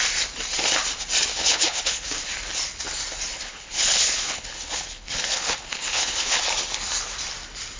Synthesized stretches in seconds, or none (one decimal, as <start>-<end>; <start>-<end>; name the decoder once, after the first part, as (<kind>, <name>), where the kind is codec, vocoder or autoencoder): 1.3-2.3 (codec, HILCodec); 3.3-6.4